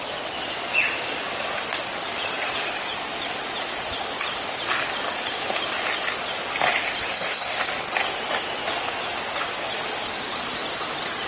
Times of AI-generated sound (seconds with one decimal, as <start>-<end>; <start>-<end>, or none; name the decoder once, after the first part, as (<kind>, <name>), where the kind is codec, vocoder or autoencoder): 7.1-7.6 (codec, SNAC)